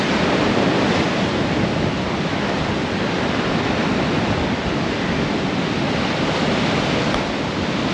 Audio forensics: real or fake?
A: real